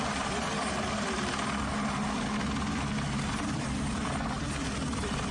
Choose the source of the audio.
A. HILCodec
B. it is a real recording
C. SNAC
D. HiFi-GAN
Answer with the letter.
B